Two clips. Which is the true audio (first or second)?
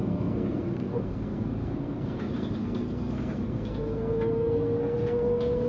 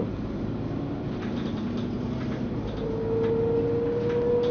second